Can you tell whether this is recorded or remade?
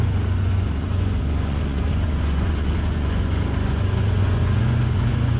remade